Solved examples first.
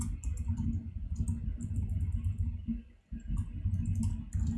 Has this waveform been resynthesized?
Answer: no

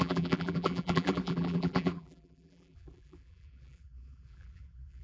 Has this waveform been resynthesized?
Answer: yes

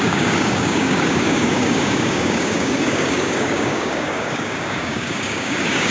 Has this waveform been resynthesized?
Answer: yes